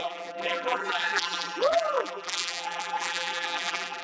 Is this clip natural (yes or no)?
no